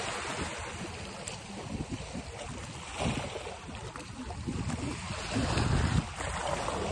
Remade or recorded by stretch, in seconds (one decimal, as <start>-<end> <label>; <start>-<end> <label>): 0.0-6.9 recorded